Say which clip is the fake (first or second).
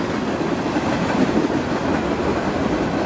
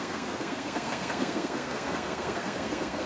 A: second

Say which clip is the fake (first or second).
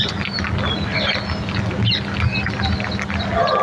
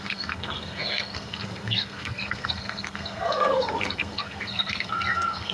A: second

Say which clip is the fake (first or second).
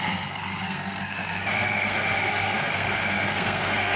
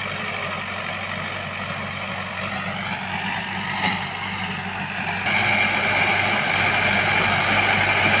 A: first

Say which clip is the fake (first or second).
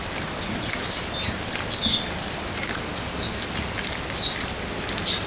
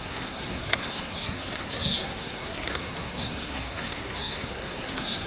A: second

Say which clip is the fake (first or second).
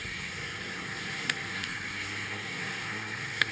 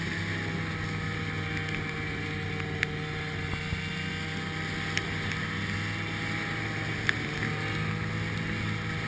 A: first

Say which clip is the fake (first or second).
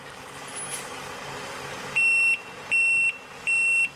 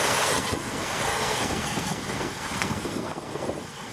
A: second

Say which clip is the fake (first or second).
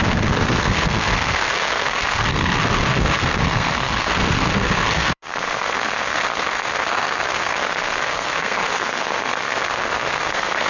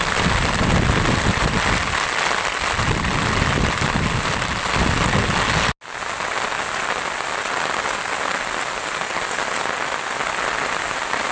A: first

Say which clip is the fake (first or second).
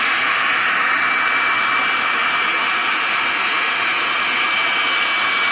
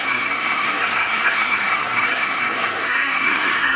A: second